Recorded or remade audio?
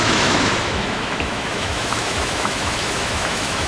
remade